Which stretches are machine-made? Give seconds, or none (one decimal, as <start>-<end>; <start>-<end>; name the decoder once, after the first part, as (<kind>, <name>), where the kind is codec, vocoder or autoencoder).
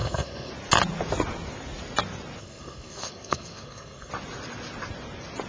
0.0-0.5 (codec, SNAC); 2.4-4.1